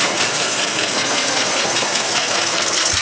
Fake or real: fake